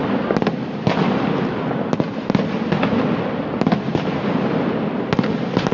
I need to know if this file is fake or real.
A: real